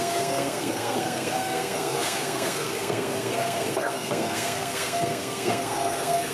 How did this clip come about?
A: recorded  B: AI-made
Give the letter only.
B